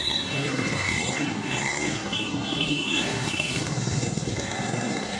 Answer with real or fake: fake